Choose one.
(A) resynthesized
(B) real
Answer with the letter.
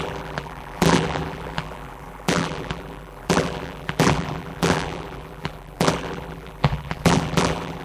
A